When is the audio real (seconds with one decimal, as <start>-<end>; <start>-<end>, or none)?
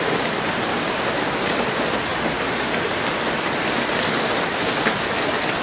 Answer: 0.0-0.7; 1.3-5.6